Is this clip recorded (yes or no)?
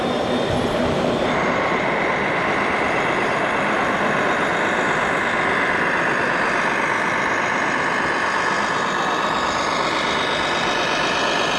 yes